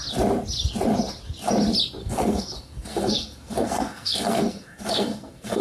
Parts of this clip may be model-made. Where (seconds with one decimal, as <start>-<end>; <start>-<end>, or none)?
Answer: 2.0-5.6